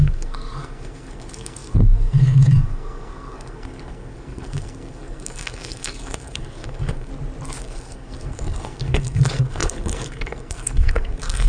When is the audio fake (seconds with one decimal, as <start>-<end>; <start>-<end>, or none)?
0.0-7.1; 7.6-11.5